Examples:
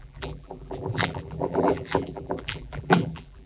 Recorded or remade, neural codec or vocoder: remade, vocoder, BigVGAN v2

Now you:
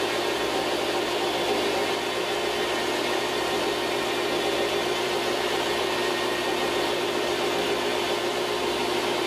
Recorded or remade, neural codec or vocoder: remade, vocoder, BigVGAN v2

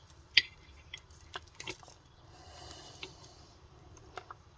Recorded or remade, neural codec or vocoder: remade, vocoder, BigVGAN v2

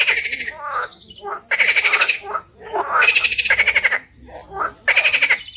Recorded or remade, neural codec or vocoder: recorded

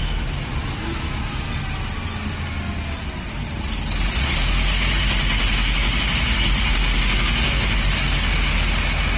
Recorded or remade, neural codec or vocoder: recorded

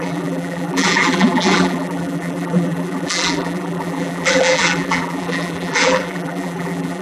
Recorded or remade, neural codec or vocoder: remade, vocoder, BigVGAN v2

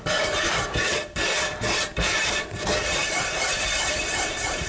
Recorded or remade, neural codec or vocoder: remade, vocoder, BigVGAN v2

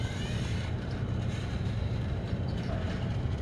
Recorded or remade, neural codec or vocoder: remade, vocoder, BigVGAN v2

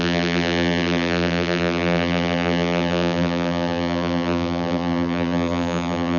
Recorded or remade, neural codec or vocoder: remade, vocoder, BigVGAN v2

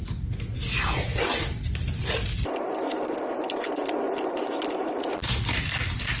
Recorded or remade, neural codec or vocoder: recorded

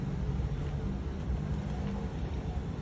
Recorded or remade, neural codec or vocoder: recorded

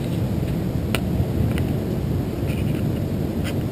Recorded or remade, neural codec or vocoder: recorded